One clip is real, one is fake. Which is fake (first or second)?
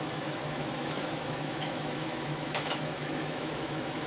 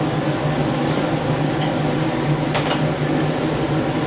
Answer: first